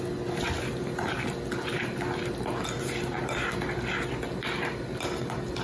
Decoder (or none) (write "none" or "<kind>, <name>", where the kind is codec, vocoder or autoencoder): none